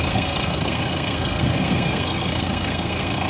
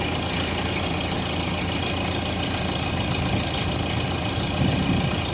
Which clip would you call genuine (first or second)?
second